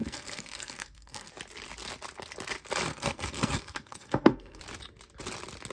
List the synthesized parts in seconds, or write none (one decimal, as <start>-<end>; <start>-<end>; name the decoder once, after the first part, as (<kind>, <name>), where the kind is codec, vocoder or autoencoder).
0.0-1.3 (codec, SNAC); 2.9-4.6